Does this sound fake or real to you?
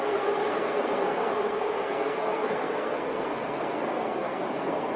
fake